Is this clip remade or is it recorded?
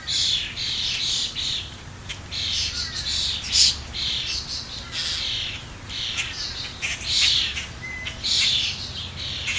recorded